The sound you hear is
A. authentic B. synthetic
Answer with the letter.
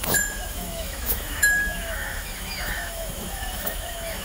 B